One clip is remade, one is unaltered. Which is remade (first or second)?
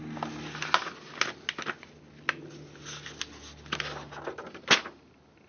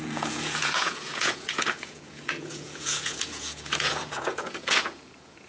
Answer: second